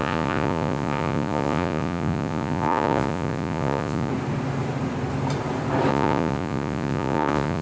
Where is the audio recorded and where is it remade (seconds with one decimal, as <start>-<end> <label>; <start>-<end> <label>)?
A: 0.0-4.1 remade; 4.1-5.9 recorded; 5.9-7.6 remade